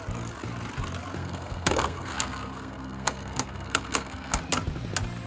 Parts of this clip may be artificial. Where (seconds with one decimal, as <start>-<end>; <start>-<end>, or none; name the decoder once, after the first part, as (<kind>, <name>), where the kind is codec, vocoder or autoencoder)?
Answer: 1.2-4.4 (codec, SNAC)